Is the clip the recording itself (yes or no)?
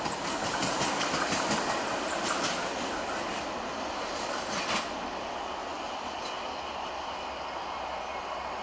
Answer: yes